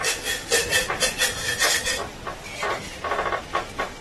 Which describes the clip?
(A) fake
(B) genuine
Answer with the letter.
B